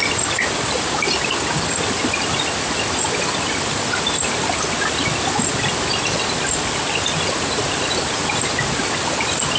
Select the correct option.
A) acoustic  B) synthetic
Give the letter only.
A